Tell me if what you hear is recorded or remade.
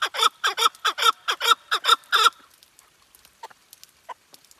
recorded